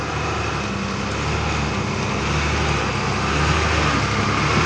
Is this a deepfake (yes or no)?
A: no